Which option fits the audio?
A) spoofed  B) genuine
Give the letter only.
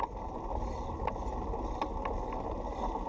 B